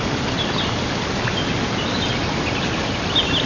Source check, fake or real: real